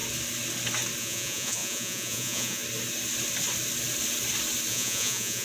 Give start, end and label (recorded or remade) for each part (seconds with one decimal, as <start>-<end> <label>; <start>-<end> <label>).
0.0-1.0 recorded; 1.0-2.6 remade; 2.6-4.7 recorded; 4.7-5.4 remade